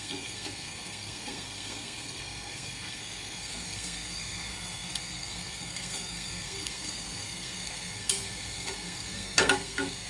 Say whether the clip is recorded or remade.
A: remade